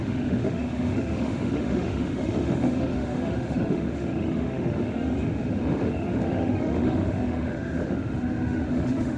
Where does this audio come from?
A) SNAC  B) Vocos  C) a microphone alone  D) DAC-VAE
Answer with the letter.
D